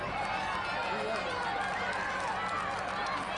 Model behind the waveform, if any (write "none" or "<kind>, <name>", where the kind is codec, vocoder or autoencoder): none